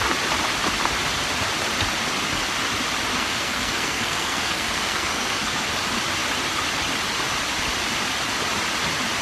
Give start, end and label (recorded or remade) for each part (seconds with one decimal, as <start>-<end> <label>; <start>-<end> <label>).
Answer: 0.0-3.1 recorded; 3.1-5.7 remade; 5.7-9.2 recorded